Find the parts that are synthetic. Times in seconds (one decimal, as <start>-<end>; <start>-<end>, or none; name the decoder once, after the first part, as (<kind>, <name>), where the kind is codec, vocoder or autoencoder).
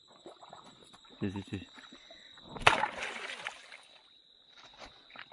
none